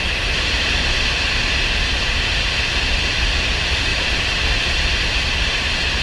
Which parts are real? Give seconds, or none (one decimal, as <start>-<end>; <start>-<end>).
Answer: 0.0-3.9; 4.5-6.0